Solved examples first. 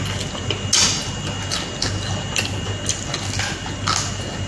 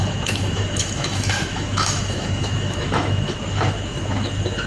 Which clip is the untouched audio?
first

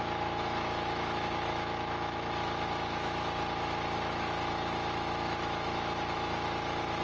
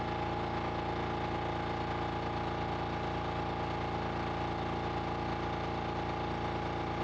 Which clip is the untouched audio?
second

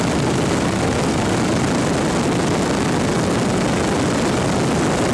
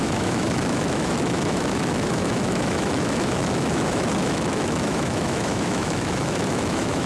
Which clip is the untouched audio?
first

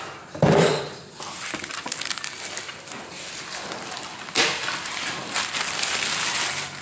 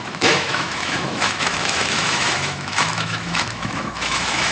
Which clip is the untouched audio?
first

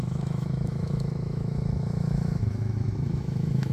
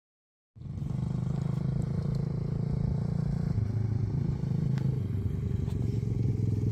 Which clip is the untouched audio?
second